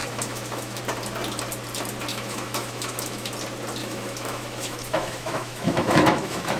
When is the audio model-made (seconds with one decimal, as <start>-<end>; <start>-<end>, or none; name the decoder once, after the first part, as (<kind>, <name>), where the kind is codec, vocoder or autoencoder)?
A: 0.0-0.8 (autoencoder, DAC-VAE); 2.1-3.3; 3.8-6.6